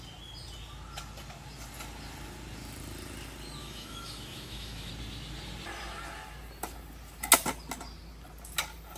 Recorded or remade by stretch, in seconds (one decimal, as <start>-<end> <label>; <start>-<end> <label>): 0.0-3.6 recorded; 3.6-4.9 remade; 4.9-9.0 recorded